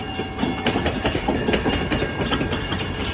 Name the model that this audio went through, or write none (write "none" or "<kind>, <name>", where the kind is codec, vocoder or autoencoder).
none